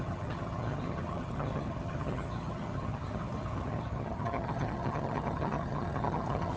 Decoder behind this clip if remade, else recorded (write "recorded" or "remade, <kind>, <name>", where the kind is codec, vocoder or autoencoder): remade, vocoder, HiFi-GAN